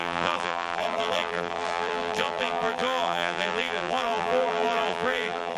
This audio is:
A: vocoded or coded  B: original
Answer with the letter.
A